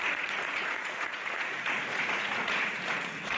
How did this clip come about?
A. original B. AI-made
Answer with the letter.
B